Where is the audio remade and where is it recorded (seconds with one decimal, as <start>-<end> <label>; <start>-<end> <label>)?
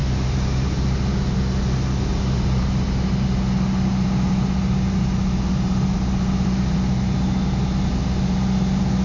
0.0-9.0 recorded